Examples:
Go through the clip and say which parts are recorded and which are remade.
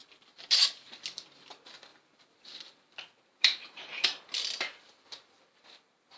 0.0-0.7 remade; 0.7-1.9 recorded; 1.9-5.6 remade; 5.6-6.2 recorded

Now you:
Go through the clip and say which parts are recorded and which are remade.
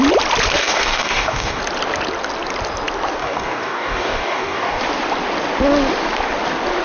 0.0-0.6 recorded; 0.6-1.6 remade; 1.6-3.2 recorded; 3.2-4.8 remade; 4.8-6.8 recorded